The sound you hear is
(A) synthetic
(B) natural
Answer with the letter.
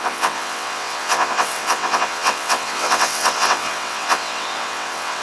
A